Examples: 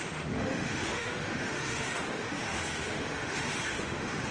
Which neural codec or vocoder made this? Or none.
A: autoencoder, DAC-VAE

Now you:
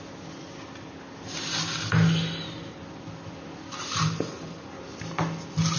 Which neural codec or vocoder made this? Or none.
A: none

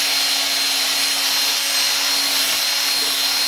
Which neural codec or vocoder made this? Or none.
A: none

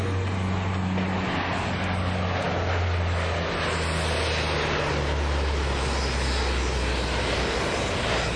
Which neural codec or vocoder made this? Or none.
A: none